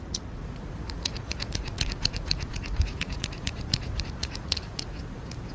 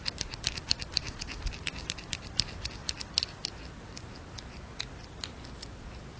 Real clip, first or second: second